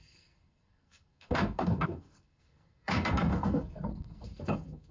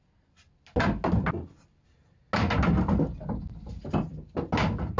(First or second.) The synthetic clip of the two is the first